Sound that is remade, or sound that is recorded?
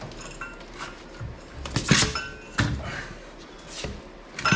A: recorded